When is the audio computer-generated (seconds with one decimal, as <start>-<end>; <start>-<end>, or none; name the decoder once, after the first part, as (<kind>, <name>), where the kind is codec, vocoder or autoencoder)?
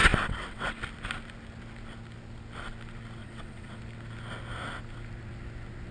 0.0-0.8 (vocoder, WaveNeXt); 3.2-3.8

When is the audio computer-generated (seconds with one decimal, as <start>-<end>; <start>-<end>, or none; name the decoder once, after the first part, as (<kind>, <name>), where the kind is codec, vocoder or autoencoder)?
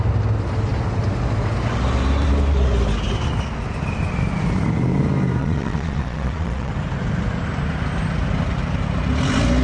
5.4-6.7 (vocoder, Vocos)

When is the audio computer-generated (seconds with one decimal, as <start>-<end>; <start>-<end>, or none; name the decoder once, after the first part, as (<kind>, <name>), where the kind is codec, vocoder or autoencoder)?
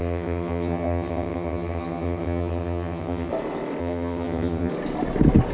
0.0-3.3 (vocoder, HiFi-GAN); 3.8-4.7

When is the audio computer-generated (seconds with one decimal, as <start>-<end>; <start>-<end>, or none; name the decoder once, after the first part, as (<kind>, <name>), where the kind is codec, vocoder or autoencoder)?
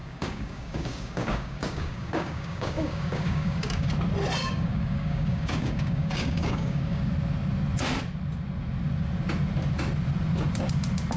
0.0-3.9 (codec, DAC); 4.4-7.1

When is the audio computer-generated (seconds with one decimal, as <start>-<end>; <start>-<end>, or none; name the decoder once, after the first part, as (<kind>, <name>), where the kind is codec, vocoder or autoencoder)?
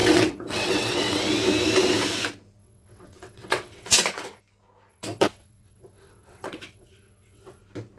0.0-1.2 (vocoder, WaveNeXt); 2.6-4.4; 4.9-7.6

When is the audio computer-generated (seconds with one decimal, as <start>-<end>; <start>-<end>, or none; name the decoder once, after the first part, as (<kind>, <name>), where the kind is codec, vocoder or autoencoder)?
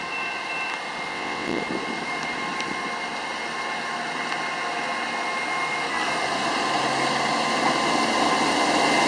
1.1-1.6 (vocoder, WaveNeXt)